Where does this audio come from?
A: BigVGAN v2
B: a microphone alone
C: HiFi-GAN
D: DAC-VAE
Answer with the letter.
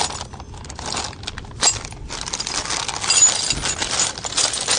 B